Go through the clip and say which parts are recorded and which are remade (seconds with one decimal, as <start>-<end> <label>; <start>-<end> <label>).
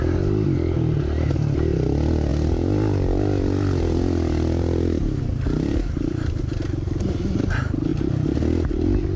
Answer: 0.0-9.2 recorded